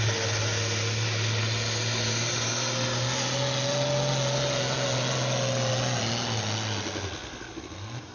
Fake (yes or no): no